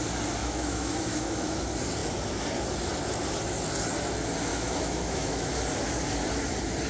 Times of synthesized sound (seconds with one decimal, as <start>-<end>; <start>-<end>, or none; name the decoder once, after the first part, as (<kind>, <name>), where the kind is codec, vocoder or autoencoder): 0.4-1.6 (autoencoder, DAC-VAE); 4.5-5.5